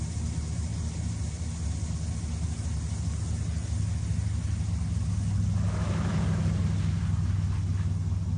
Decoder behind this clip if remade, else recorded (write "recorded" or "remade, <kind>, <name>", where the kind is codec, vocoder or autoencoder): recorded